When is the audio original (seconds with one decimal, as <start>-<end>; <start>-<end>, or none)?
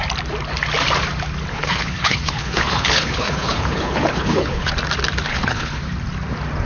0.0-1.5; 4.7-5.3; 5.8-6.7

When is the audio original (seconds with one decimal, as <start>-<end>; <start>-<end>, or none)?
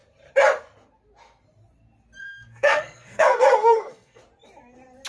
0.0-2.2; 4.2-5.1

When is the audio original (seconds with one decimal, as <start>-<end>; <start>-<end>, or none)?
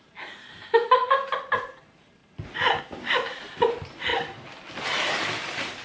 2.2-2.8; 4.1-4.8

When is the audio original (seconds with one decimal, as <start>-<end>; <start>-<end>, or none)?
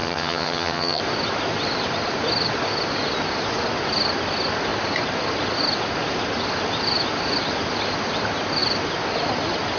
1.0-9.8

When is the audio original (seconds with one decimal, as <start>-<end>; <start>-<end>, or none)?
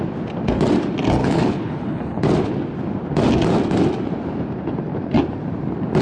0.0-1.2; 2.2-6.0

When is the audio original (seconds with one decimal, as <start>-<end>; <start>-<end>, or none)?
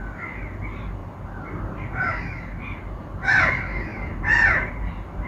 0.0-1.0; 1.6-3.9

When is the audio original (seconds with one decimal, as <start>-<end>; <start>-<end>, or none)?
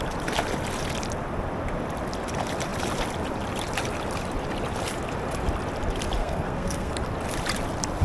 0.0-6.2; 6.9-8.0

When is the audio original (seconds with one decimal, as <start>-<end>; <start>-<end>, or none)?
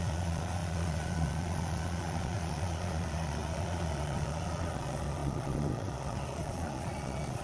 none